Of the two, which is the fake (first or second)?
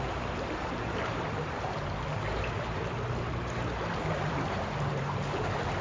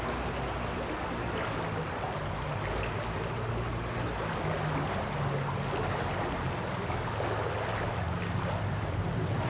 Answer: first